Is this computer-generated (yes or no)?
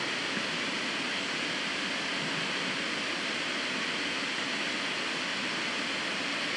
no